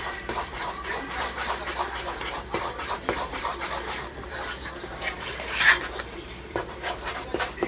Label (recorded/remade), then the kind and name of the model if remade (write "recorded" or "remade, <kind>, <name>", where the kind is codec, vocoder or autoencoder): remade, vocoder, BigVGAN v2